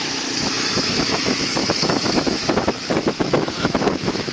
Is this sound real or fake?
fake